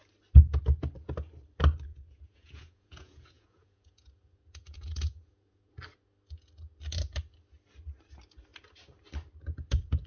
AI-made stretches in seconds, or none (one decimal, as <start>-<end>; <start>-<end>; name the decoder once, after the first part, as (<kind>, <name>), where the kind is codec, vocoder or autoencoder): 1.9-5.7 (vocoder, Vocos)